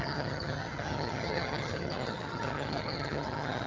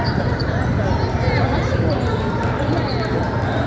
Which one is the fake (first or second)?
first